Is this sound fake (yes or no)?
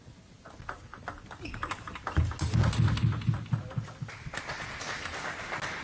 no